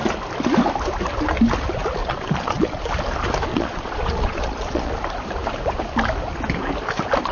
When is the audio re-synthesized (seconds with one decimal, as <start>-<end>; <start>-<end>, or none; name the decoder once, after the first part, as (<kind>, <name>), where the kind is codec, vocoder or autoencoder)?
2.0-2.8 (vocoder, Vocos); 3.5-4.9